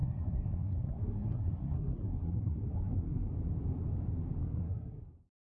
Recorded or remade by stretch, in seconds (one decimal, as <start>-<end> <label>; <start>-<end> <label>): 0.0-3.3 remade; 3.3-4.4 recorded; 4.4-5.0 remade; 5.0-5.5 recorded